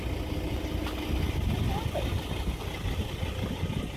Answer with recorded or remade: recorded